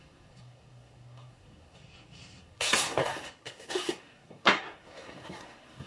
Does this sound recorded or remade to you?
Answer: remade